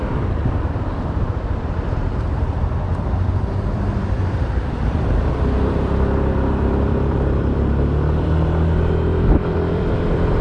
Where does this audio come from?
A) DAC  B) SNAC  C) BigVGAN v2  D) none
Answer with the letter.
C